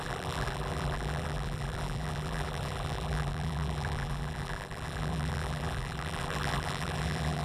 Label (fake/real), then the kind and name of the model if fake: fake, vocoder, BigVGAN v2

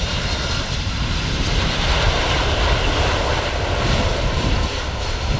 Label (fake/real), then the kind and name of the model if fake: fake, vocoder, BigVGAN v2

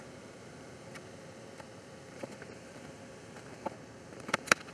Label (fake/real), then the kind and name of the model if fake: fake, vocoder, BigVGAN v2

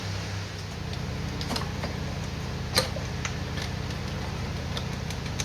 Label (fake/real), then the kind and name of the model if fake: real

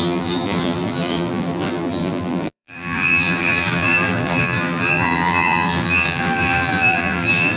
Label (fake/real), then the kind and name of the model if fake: fake, vocoder, BigVGAN v2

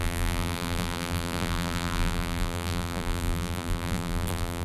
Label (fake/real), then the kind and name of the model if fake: fake, vocoder, BigVGAN v2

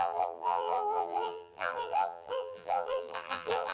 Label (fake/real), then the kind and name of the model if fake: fake, vocoder, BigVGAN v2